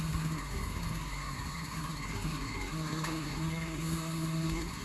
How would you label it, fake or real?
fake